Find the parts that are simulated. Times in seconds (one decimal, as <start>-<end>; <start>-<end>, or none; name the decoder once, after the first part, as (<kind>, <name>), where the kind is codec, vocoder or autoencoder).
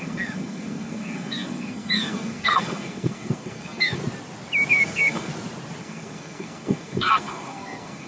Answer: 0.0-4.0 (codec, SNAC); 4.7-5.3; 5.8-8.1